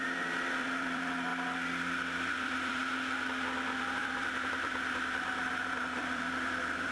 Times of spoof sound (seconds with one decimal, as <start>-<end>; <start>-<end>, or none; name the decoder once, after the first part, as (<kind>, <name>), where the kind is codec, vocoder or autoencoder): 0.0-1.3 (vocoder, BigVGAN v2); 2.3-2.8; 3.8-6.9